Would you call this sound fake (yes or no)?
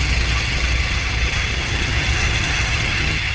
yes